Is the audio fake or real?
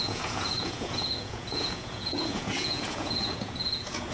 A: fake